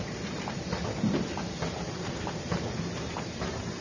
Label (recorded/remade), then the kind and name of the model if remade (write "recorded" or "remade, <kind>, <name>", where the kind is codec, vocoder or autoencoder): remade, vocoder, BigVGAN v2